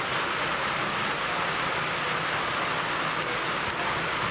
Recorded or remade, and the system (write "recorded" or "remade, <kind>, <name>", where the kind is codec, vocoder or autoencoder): recorded